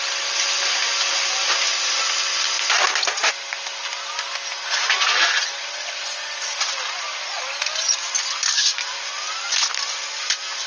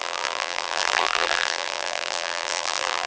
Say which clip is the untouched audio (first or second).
first